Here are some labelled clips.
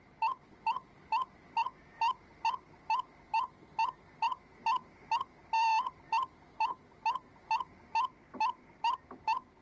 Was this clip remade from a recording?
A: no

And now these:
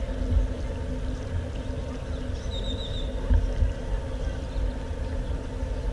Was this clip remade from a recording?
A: no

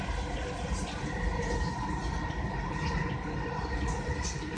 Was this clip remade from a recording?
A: no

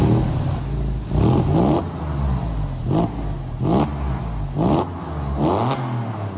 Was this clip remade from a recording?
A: no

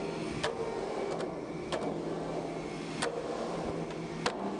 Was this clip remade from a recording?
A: no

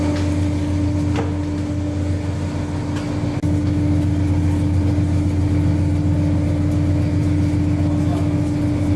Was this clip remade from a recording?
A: no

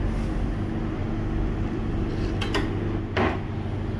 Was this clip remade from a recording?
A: no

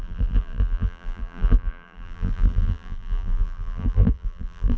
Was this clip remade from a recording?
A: yes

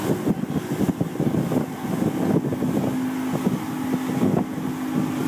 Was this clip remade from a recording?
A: no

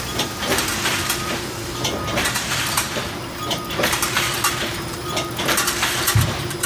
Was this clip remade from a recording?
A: yes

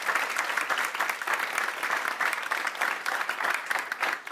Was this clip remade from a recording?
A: yes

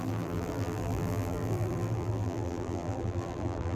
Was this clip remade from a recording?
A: yes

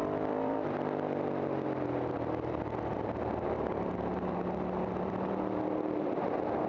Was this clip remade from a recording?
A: yes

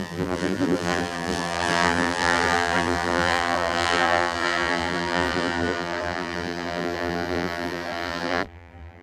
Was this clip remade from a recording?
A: yes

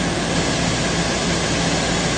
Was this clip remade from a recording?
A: no